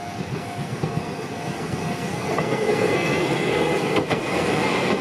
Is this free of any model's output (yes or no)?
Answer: no